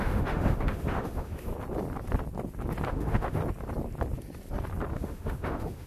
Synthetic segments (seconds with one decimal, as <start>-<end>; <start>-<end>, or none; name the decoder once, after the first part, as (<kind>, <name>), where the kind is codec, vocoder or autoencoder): 0.0-1.5 (autoencoder, DAC-VAE); 2.9-3.4; 4.9-5.9